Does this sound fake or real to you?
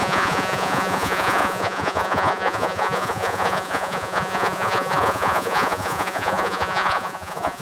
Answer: fake